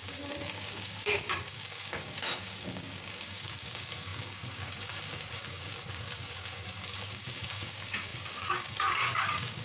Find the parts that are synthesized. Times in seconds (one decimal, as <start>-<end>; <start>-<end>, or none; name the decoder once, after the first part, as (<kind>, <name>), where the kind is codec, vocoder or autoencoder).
0.0-9.6 (codec, DAC)